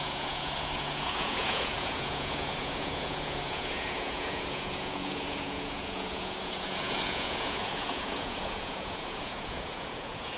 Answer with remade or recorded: remade